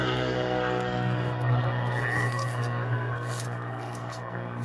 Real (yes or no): no